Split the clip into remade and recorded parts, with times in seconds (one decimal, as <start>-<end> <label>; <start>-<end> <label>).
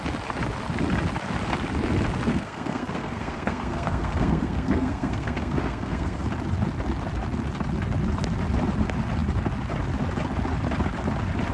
0.0-2.3 recorded; 2.3-6.2 remade; 6.2-11.5 recorded